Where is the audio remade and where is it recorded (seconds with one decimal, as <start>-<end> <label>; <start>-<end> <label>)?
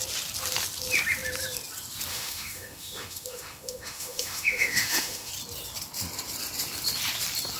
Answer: 0.0-2.1 recorded; 2.1-5.3 remade; 5.3-7.6 recorded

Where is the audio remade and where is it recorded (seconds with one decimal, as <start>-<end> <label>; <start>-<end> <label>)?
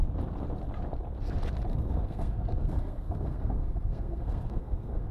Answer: 0.0-1.7 recorded; 1.7-5.1 remade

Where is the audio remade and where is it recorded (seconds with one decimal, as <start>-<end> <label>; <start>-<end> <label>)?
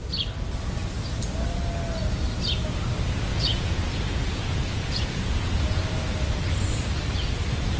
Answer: 0.0-3.3 recorded; 3.3-5.8 remade; 5.8-7.8 recorded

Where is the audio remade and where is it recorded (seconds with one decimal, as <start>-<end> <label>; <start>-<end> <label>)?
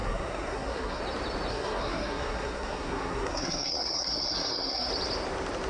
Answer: 0.0-1.0 remade; 1.0-1.5 recorded; 1.5-4.9 remade; 4.9-5.7 recorded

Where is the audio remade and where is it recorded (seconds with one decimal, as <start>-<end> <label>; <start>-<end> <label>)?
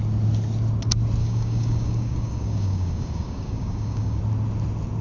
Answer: 0.0-1.2 recorded; 1.2-4.2 remade; 4.2-5.0 recorded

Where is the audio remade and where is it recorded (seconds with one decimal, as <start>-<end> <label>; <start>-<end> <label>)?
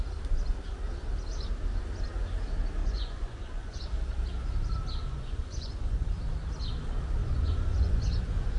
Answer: 0.0-2.8 recorded; 2.8-3.8 remade; 3.8-5.0 recorded; 5.0-6.1 remade; 6.1-7.2 recorded; 7.2-8.6 remade